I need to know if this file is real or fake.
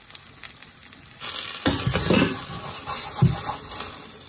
real